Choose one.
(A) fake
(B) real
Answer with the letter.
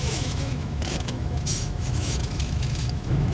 A